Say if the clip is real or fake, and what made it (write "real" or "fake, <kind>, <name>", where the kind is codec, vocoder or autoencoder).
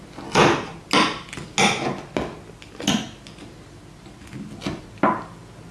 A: real